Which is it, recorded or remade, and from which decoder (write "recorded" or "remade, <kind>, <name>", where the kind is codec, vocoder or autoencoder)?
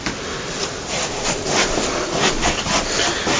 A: recorded